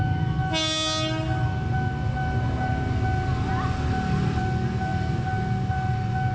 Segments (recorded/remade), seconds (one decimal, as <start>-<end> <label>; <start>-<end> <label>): 0.0-6.3 recorded